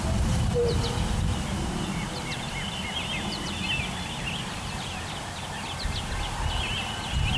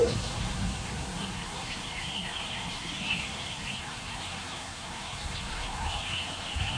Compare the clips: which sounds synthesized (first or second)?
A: second